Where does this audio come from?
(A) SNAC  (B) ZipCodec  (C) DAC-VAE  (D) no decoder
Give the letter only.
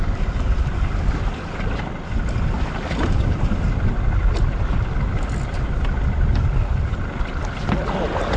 D